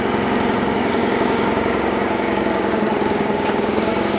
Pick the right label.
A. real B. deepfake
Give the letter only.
B